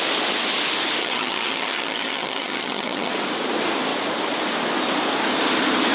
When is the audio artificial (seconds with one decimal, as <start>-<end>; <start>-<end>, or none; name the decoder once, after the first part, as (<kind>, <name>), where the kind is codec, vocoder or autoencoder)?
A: 1.0-3.1 (vocoder, HiFi-GAN)